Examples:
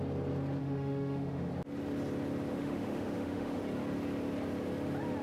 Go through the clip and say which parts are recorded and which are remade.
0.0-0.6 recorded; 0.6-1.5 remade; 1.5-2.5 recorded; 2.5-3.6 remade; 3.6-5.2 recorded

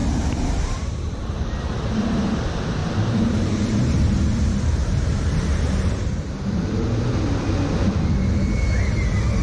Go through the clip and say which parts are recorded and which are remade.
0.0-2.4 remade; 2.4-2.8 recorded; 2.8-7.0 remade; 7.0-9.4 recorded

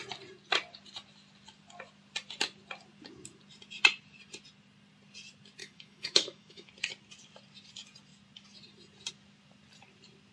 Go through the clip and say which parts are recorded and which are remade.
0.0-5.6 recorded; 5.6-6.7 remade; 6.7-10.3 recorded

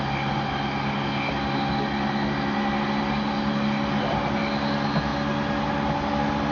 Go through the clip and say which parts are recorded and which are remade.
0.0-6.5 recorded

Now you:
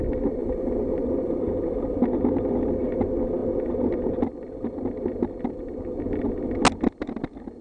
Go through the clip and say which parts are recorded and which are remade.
0.0-0.4 recorded; 0.4-2.0 remade; 2.0-7.6 recorded